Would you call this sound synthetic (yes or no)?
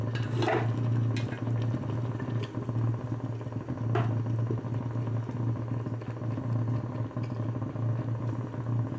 no